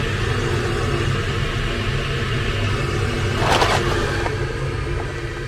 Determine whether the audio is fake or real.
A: real